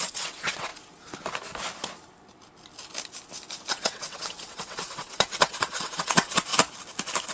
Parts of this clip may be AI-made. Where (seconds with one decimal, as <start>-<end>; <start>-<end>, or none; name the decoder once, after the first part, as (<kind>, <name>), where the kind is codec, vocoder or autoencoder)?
0.0-0.7 (vocoder, WaveNeXt); 3.7-6.5